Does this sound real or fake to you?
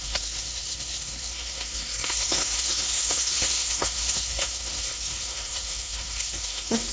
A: fake